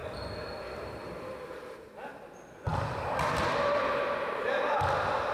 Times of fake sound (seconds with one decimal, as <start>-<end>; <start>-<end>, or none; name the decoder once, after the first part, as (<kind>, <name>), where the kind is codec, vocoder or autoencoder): 1.0-2.1 (vocoder, BigVGAN v2); 2.7-4.7